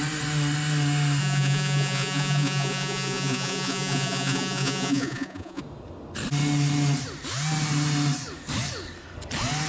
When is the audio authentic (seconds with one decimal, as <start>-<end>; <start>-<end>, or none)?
0.0-1.2; 5.6-9.7